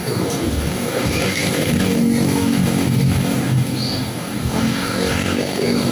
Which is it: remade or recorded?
remade